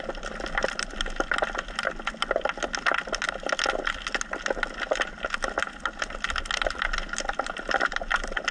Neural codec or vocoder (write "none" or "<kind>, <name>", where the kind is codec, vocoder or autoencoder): none